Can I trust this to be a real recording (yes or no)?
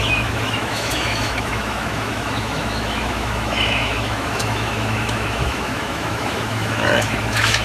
no